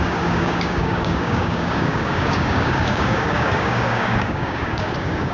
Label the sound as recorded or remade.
remade